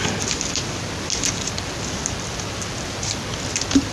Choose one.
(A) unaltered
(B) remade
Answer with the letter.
A